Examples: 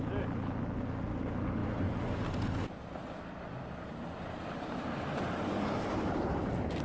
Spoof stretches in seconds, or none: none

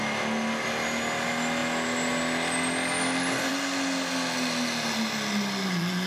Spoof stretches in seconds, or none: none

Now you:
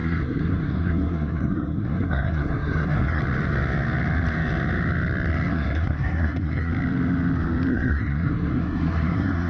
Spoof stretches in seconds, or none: 0.0-3.2 (codec, SNAC); 5.5-6.7; 7.7-9.5

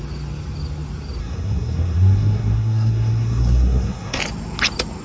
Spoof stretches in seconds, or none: 1.2-4.2 (codec, SNAC)

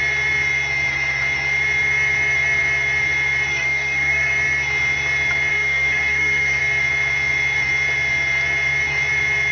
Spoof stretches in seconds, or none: 3.5-4.3 (codec, SNAC); 5.5-6.6